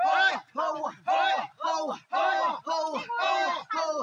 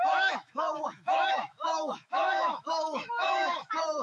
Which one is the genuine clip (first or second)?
first